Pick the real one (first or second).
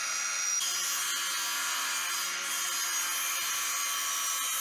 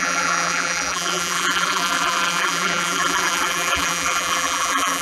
first